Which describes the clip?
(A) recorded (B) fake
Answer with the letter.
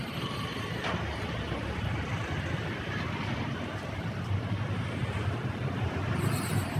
B